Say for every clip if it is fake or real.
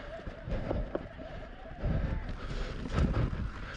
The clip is real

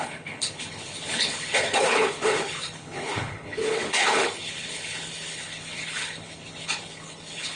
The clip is fake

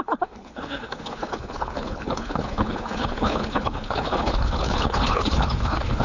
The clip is fake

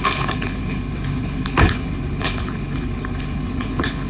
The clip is fake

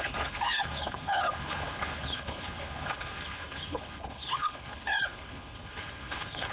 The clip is fake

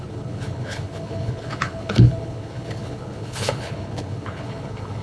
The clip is fake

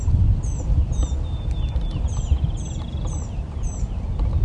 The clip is real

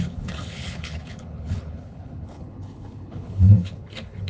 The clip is fake